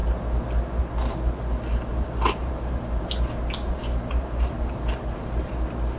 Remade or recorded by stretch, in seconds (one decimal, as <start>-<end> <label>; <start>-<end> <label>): 0.0-1.9 recorded; 1.9-5.5 remade; 5.5-6.0 recorded